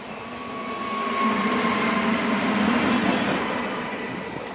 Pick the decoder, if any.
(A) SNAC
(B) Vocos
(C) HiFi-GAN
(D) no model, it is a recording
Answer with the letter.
D